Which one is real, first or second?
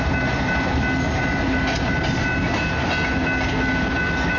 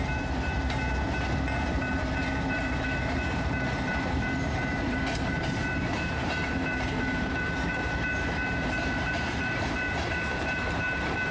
first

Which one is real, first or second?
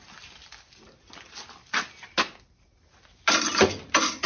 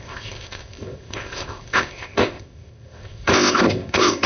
first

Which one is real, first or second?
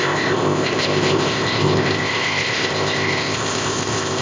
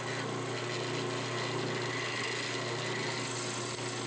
second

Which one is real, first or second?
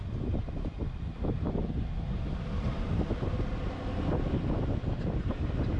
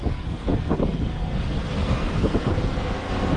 first